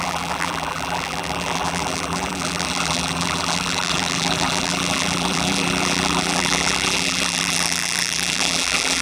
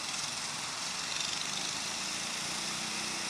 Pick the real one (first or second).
second